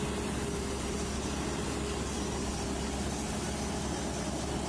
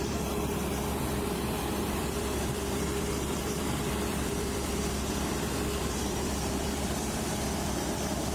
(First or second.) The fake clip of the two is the second